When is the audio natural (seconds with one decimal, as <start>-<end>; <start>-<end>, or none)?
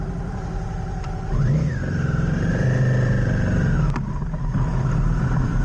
0.0-5.6